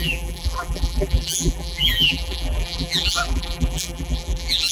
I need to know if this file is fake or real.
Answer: fake